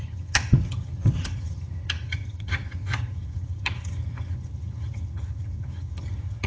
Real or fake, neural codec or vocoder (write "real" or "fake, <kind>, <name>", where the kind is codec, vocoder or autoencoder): fake, vocoder, HiFi-GAN